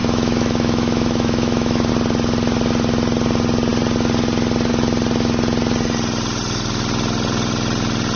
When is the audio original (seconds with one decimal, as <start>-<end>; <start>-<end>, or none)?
1.9-8.2